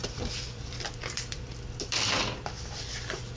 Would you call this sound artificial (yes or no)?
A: yes